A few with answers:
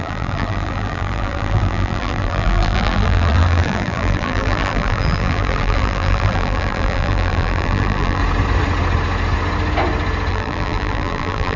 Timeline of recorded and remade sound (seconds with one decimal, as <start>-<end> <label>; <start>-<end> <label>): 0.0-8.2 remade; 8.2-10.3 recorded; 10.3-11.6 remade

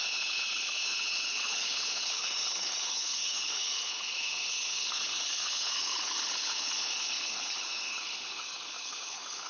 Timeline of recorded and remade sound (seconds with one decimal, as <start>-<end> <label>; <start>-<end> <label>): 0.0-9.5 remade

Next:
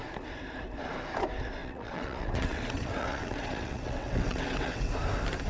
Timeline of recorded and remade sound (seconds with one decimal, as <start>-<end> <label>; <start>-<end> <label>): 0.0-1.6 recorded; 1.6-4.9 remade; 4.9-5.5 recorded

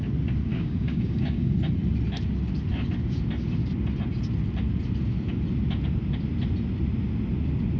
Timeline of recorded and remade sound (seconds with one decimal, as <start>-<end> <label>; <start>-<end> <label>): 0.0-0.5 recorded; 0.5-1.5 remade; 1.5-7.8 recorded

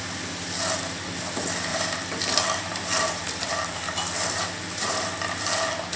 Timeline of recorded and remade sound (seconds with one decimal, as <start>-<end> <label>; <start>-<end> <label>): 0.0-1.7 recorded; 1.7-3.5 remade; 3.5-6.0 recorded

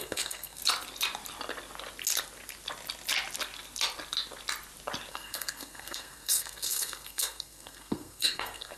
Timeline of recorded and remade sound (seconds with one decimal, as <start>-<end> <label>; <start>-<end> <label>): 0.0-0.6 remade; 0.6-5.1 recorded; 5.1-8.8 remade

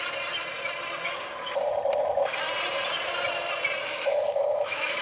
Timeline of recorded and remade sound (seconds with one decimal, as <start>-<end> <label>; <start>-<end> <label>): 0.0-3.8 recorded; 3.8-5.0 remade